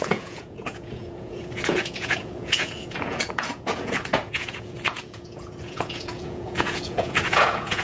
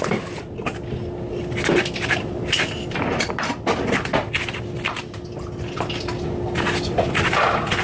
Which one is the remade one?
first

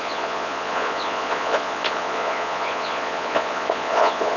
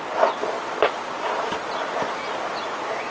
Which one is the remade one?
first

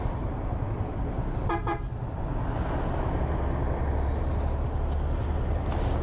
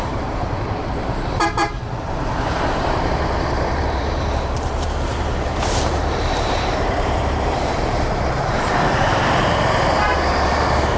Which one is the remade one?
second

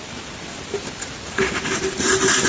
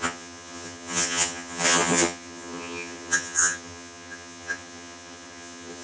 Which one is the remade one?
second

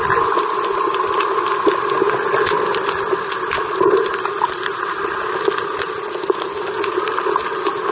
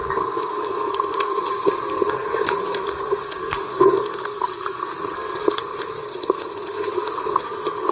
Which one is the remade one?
second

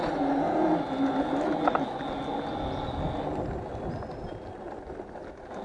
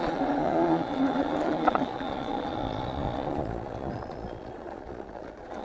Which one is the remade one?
second